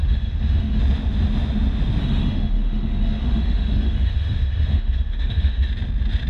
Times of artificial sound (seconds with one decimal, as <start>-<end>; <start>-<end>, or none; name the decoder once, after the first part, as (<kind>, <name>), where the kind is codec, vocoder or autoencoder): 0.0-0.8 (autoencoder, DAC-VAE); 2.0-5.7